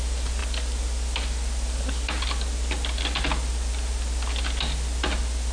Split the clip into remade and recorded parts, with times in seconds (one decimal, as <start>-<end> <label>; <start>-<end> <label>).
0.0-5.5 recorded